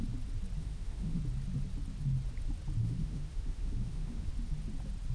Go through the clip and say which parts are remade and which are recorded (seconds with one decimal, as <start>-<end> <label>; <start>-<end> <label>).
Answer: 0.0-0.6 recorded; 0.6-1.2 remade; 1.2-2.8 recorded; 2.8-4.3 remade; 4.3-5.1 recorded

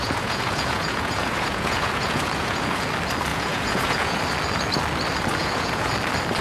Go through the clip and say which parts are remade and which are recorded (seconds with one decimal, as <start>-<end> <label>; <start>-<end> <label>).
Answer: 0.0-2.9 remade; 2.9-3.3 recorded; 3.3-4.2 remade; 4.2-5.4 recorded; 5.4-5.9 remade; 5.9-6.4 recorded

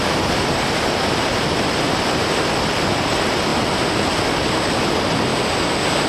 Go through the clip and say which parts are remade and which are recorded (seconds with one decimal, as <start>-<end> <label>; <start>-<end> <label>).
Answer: 0.0-3.5 remade; 3.5-4.8 recorded; 4.8-5.3 remade; 5.3-6.1 recorded

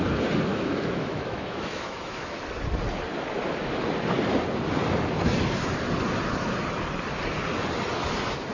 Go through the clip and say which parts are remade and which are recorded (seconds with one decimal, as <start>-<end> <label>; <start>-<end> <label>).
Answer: 0.0-0.5 recorded; 0.5-2.4 remade; 2.4-8.5 recorded

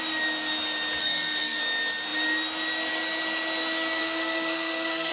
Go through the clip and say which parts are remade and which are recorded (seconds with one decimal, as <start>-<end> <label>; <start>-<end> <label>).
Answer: 0.0-1.0 recorded; 1.0-1.6 remade; 1.6-4.0 recorded; 4.0-5.1 remade